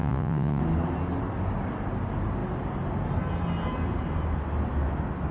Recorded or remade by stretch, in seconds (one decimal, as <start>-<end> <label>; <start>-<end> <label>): 0.0-0.6 remade; 0.6-5.3 recorded